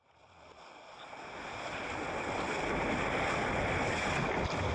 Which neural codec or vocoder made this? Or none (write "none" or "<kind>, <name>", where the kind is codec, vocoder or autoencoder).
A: none